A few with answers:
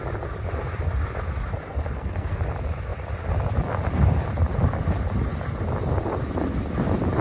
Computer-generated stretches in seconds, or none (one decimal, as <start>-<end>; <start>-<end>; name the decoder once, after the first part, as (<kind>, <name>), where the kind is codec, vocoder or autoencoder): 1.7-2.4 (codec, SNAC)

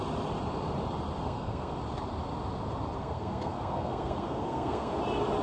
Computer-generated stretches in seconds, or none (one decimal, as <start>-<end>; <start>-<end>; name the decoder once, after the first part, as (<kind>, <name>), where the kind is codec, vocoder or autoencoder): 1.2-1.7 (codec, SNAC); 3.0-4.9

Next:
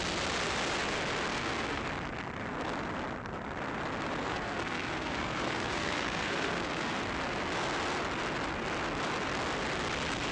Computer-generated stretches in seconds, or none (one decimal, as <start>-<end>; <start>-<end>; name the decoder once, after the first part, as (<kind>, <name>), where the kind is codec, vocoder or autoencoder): 1.3-1.8 (codec, SNAC); 4.2-7.0